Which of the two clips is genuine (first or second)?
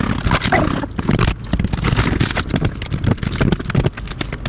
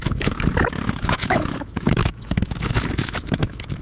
first